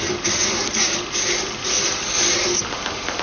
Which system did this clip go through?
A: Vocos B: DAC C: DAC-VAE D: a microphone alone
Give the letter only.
D